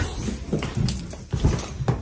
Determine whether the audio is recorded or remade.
recorded